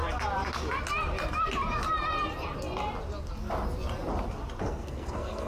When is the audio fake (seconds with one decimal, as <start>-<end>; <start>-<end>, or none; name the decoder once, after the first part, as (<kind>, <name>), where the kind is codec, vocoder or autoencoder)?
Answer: 4.6-5.5 (codec, SNAC)